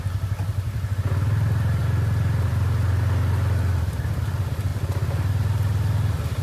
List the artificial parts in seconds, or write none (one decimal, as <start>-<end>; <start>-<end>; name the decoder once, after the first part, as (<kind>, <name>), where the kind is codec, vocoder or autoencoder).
none